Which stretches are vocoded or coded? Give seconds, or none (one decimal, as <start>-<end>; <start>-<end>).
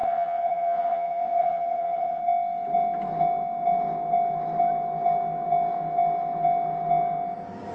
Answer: 0.0-2.2